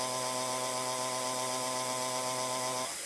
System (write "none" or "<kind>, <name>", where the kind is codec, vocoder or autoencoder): none